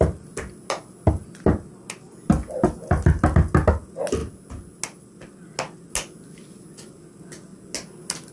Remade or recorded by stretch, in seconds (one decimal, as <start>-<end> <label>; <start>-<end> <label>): 0.0-8.3 recorded